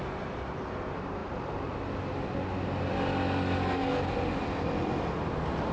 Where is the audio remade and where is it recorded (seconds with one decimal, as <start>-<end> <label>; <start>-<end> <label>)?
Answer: 0.0-5.7 recorded